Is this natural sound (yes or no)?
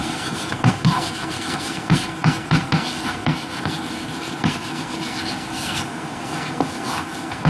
no